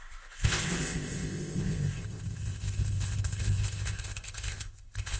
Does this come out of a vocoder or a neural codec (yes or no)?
yes